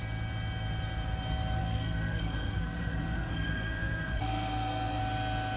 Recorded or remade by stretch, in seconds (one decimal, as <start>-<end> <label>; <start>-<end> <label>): 0.0-1.6 recorded; 1.6-5.0 remade; 5.0-5.6 recorded